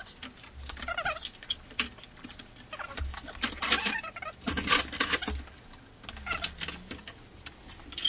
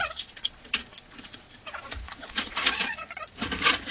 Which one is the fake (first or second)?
second